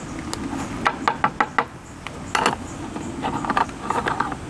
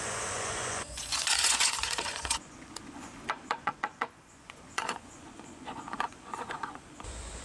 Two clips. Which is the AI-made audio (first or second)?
second